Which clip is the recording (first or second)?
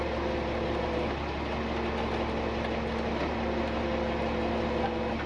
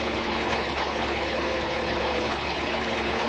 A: first